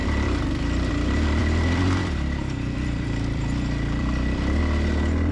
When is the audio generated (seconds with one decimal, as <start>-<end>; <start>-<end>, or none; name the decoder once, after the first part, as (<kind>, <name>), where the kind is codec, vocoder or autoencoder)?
0.0-0.9 (vocoder, BigVGAN v2); 1.4-4.6